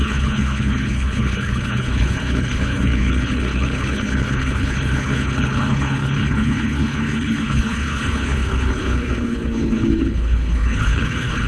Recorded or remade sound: remade